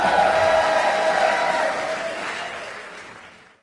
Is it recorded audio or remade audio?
recorded